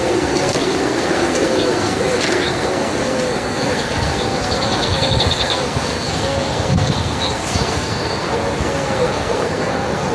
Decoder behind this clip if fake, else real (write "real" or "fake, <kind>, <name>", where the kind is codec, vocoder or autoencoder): fake, codec, SNAC